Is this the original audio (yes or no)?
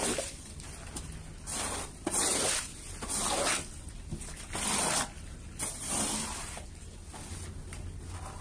yes